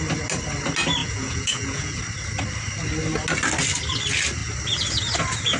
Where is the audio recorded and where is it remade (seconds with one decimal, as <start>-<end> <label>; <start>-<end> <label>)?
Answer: 0.0-1.0 recorded; 1.0-2.0 remade; 2.0-5.6 recorded